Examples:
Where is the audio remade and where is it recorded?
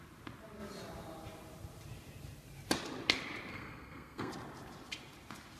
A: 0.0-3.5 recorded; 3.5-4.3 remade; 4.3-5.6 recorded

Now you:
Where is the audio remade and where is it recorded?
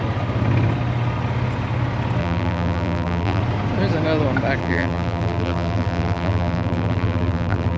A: 0.0-2.2 recorded; 2.2-3.4 remade; 3.4-4.6 recorded; 4.6-7.8 remade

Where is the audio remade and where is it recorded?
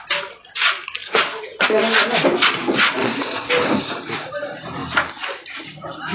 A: 0.0-3.0 recorded; 3.0-3.5 remade; 3.5-6.1 recorded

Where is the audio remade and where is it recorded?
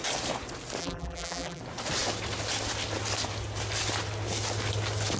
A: 0.0-0.8 recorded; 0.8-1.6 remade; 1.6-5.2 recorded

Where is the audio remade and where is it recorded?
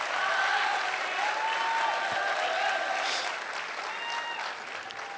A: 0.0-5.2 recorded